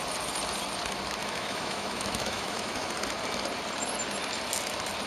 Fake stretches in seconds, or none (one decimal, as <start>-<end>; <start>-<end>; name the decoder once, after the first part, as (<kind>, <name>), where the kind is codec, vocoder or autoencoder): 1.2-2.9 (autoencoder, DAC-VAE)